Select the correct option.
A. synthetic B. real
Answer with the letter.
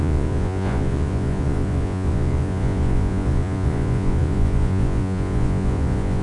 A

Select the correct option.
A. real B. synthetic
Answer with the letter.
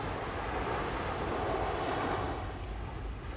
A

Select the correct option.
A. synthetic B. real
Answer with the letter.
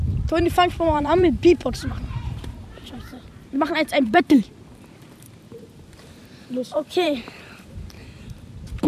A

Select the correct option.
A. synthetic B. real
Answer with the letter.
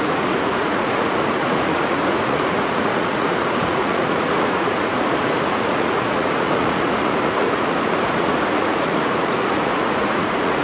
A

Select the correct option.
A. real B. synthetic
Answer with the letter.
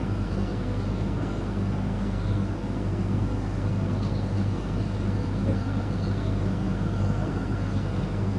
B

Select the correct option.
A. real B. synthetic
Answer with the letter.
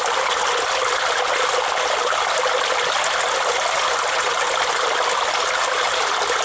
A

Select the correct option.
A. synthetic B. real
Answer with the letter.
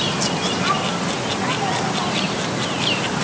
B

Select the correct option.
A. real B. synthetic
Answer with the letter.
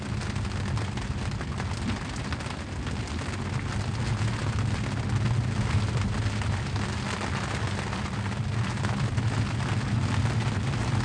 A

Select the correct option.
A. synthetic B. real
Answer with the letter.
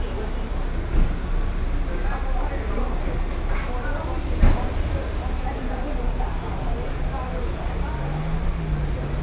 B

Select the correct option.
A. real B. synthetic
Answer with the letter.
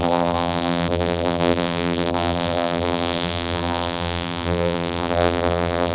B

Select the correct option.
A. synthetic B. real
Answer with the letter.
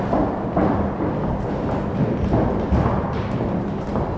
B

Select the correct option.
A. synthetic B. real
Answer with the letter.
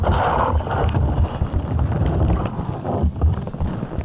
B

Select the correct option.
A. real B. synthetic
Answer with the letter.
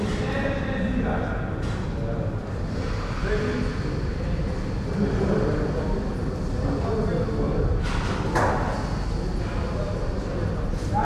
A